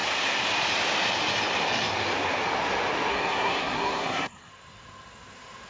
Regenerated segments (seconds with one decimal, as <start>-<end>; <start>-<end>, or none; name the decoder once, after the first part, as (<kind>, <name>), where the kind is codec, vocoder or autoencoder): 3.1-4.5 (codec, SNAC)